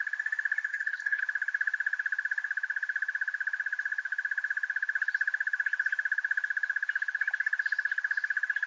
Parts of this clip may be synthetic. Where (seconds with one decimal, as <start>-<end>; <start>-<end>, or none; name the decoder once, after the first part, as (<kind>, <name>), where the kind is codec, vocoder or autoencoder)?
0.7-1.2 (codec, HILCodec)